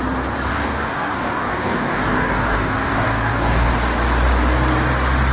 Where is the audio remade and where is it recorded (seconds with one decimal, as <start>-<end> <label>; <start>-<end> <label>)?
0.0-0.5 recorded; 0.5-3.7 remade; 3.7-5.3 recorded